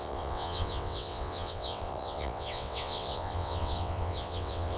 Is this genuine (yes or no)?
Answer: no